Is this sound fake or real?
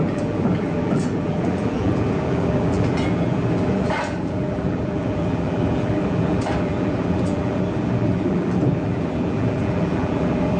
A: fake